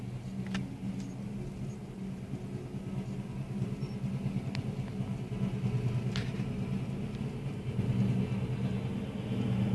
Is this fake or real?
real